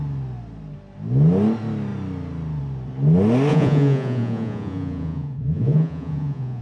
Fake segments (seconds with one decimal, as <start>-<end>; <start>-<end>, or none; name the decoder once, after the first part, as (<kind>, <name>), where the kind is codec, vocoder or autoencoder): 3.5-6.6 (vocoder, Vocos)